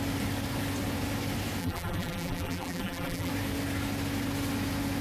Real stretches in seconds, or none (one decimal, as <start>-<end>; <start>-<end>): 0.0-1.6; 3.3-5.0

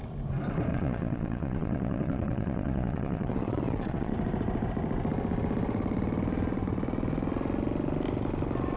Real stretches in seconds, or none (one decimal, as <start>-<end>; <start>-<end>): 0.0-0.7; 4.1-8.8

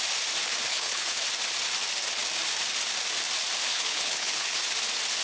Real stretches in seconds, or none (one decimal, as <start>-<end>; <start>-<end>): 0.0-0.7; 1.2-3.7; 4.6-5.2

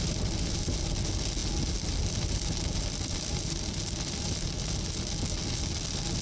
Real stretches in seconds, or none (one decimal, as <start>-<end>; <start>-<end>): 0.0-6.2

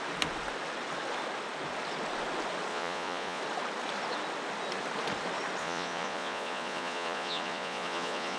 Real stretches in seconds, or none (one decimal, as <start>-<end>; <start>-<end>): 0.0-2.7; 3.4-5.6

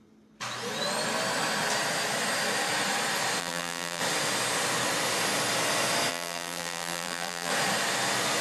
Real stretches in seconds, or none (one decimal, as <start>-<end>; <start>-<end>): 0.0-3.4; 4.0-6.1; 7.5-8.4

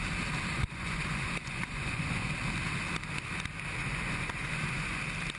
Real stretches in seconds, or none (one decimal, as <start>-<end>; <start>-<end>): 0.0-0.5; 2.3-3.8; 5.0-5.4